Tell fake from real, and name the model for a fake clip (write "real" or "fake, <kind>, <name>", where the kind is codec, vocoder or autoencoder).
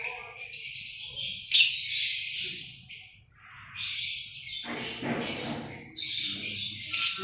real